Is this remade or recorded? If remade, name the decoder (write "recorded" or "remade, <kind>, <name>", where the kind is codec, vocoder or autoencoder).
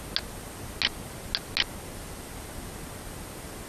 recorded